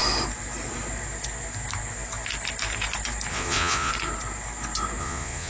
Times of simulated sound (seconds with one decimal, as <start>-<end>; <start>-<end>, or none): 3.3-3.9; 5.0-5.5